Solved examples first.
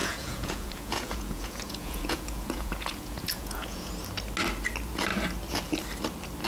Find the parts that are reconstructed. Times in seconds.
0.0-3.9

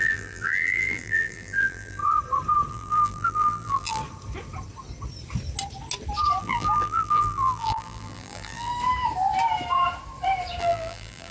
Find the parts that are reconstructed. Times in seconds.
0.0-2.0; 2.7-4.0; 6.4-8.7; 10.6-11.3

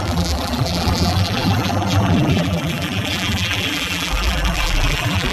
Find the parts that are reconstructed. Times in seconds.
0.0-5.3

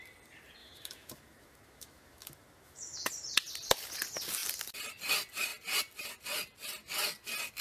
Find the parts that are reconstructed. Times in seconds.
0.6-3.1

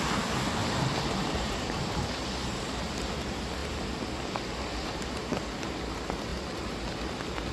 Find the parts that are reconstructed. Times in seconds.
0.6-2.9

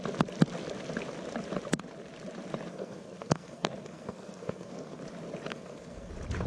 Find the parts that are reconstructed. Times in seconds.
2.7-5.0; 5.5-6.1

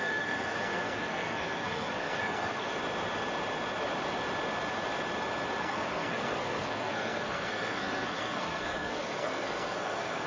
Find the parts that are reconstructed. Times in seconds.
0.0-2.7; 5.6-10.3

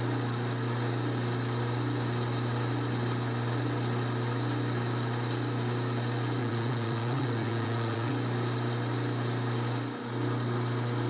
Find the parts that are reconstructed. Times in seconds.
6.4-8.1